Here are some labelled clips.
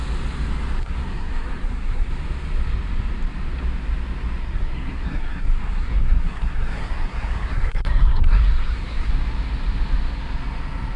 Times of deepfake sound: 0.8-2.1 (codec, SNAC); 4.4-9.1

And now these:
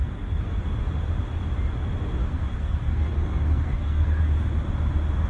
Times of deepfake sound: 0.0-0.6 (codec, SNAC); 2.2-4.2

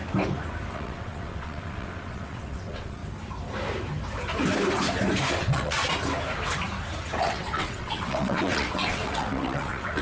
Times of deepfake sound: 0.7-3.0 (vocoder, WaveNeXt); 5.3-5.8; 7.2-10.0

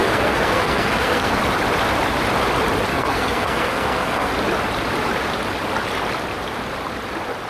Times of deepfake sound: 0.0-1.4 (codec, SNAC); 2.9-4.3

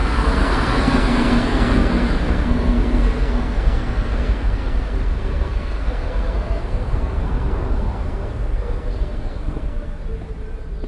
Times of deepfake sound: 0.0-10.0 (codec, SNAC)

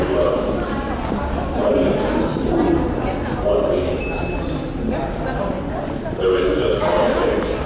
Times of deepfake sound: none

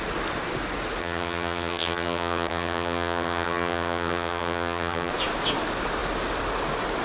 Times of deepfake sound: 1.0-5.1 (vocoder, HiFi-GAN)

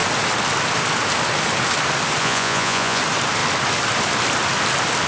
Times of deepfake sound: 2.2-3.0 (vocoder, Vocos)